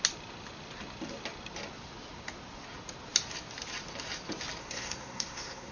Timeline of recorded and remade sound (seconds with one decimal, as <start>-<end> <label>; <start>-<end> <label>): 0.0-4.6 recorded; 4.6-5.7 remade